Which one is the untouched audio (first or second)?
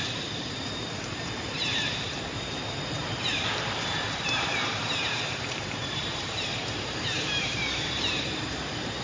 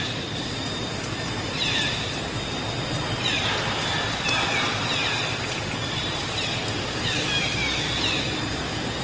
second